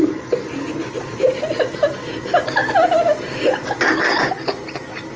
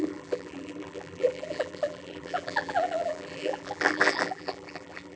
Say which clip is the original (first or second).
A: first